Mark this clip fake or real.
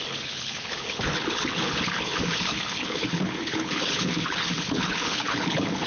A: fake